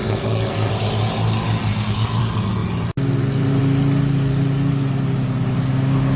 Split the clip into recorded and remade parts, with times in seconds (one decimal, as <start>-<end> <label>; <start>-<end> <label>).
0.0-0.7 remade; 0.7-1.7 recorded; 1.7-2.2 remade; 2.2-6.2 recorded